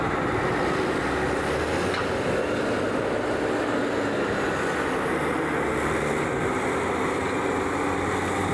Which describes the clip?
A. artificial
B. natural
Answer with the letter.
B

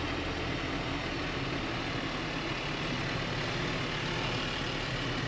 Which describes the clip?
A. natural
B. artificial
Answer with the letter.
A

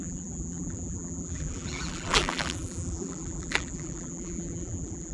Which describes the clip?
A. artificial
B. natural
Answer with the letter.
A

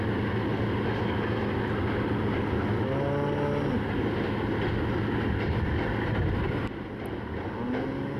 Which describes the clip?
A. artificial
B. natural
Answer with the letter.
B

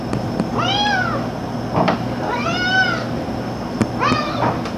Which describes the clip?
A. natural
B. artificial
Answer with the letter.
B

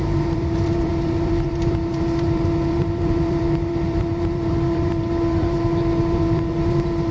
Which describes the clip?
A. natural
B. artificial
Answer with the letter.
B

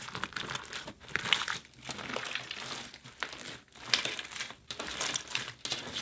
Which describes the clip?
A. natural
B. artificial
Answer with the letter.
A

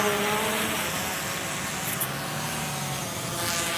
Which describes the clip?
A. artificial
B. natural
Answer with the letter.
B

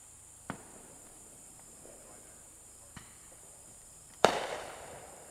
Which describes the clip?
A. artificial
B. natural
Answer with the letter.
A